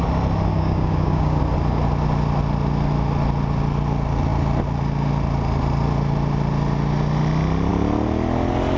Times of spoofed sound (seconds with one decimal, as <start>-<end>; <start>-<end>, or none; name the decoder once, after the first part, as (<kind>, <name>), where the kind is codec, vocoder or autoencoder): 0.5-1.4 (codec, DAC)